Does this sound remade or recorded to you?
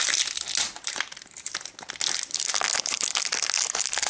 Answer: recorded